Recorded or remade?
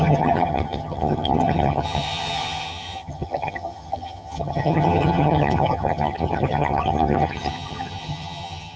remade